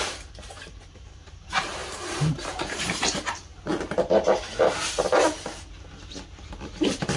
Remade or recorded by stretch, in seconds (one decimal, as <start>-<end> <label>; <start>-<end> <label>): 0.0-3.5 remade; 3.5-7.2 recorded